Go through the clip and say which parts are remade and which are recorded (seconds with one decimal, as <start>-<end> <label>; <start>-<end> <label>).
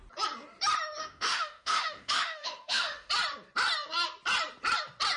0.0-1.0 recorded; 1.0-3.1 remade; 3.1-5.2 recorded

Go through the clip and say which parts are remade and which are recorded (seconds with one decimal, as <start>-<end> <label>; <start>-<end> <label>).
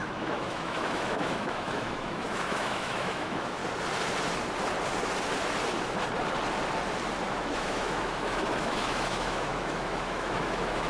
0.0-3.6 remade; 3.6-7.3 recorded; 7.3-10.9 remade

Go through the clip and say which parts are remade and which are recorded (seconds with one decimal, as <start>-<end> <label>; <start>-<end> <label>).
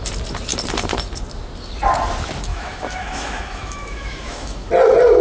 0.0-2.5 recorded; 2.5-4.7 remade; 4.7-5.2 recorded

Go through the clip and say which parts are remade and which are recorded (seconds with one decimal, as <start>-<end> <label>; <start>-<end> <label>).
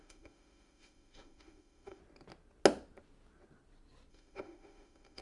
0.0-2.0 remade; 2.0-4.1 recorded; 4.1-5.2 remade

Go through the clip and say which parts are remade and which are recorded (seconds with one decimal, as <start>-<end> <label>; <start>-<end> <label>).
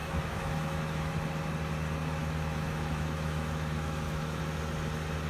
0.0-1.1 remade; 1.1-2.2 recorded; 2.2-4.4 remade; 4.4-5.3 recorded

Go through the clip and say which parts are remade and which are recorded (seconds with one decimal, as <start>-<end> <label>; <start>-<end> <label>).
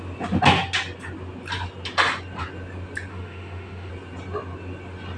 0.0-3.1 recorded; 3.1-3.9 remade; 3.9-5.2 recorded